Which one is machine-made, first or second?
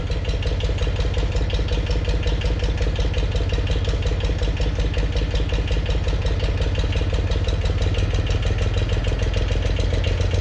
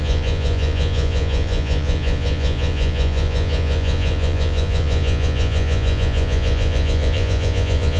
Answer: second